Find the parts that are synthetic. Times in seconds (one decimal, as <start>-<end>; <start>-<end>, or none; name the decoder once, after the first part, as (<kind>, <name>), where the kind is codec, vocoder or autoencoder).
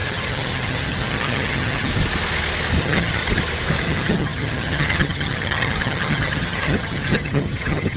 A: 0.0-1.9 (vocoder, HiFi-GAN); 2.8-3.2; 3.8-8.0